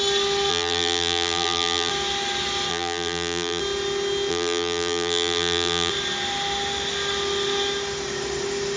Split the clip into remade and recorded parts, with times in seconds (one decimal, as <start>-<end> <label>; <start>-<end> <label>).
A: 0.0-0.5 recorded; 0.5-1.9 remade; 1.9-2.7 recorded; 2.7-3.6 remade; 3.6-4.3 recorded; 4.3-5.9 remade; 5.9-8.8 recorded